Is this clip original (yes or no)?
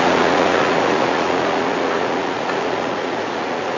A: no